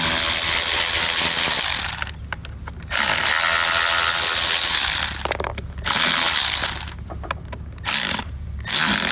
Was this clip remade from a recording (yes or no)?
no